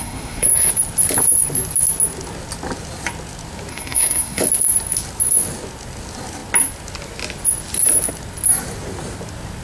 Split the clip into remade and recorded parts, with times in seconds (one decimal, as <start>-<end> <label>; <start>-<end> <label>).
0.0-0.7 remade; 0.7-3.7 recorded; 3.7-4.4 remade; 4.4-9.6 recorded